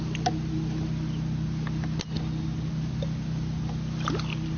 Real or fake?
real